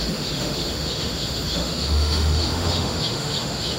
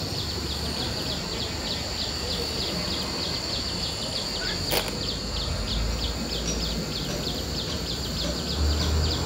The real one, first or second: second